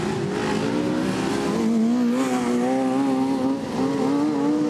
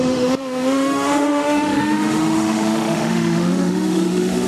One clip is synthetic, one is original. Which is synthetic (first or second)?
second